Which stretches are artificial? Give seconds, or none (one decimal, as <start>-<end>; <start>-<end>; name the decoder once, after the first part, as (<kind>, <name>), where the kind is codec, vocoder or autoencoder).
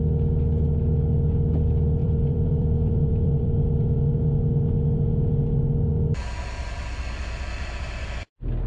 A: 2.0-4.1 (vocoder, BigVGAN v2)